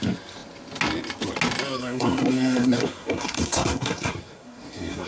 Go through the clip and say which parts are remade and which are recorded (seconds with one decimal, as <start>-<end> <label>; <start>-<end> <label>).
0.0-1.8 recorded; 1.8-5.1 remade